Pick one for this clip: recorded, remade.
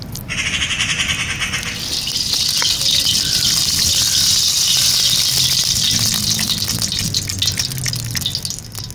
recorded